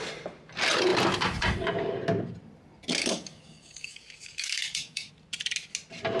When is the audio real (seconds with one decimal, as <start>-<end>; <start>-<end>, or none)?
0.0-3.0; 5.1-6.2